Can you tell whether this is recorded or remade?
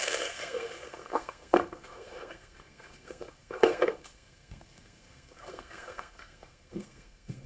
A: remade